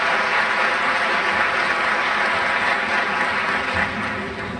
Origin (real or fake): real